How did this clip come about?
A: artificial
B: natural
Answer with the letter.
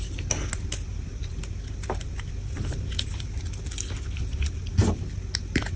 B